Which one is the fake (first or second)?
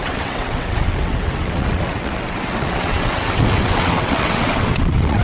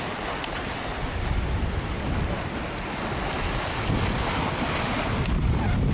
first